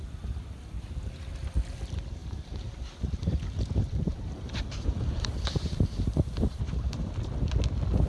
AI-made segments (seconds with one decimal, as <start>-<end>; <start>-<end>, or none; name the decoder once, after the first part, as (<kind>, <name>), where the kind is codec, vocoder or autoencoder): 2.2-7.1 (vocoder, BigVGAN v2)